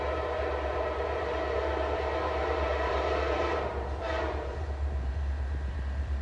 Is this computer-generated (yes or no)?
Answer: yes